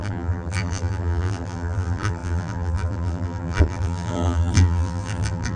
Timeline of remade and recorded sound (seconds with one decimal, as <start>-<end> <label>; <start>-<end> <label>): 0.0-5.6 remade